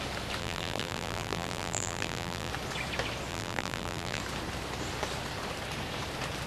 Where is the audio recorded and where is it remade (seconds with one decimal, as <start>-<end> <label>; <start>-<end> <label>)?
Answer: 0.0-0.4 recorded; 0.4-2.5 remade; 2.5-3.3 recorded; 3.3-4.2 remade; 4.2-6.5 recorded